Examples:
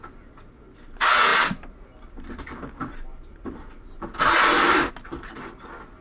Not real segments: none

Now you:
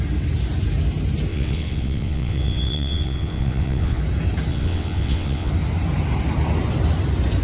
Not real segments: 1.3-4.0 (vocoder, WaveNeXt); 4.5-5.5

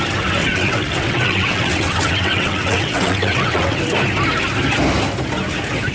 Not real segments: 0.4-3.8 (vocoder, WaveNeXt)

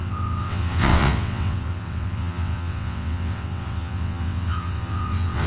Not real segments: 0.0-5.5 (vocoder, WaveNeXt)

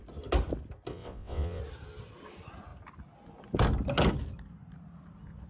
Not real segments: 0.9-1.6 (vocoder, WaveNeXt)

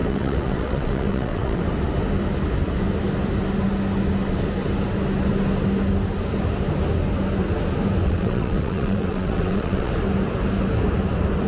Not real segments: 0.0-1.6 (vocoder, WaveNeXt); 8.0-9.9

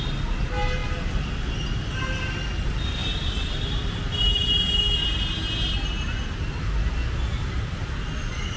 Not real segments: none

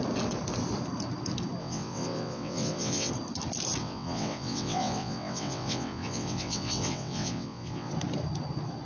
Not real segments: 1.6-3.1 (vocoder, WaveNeXt); 3.8-7.9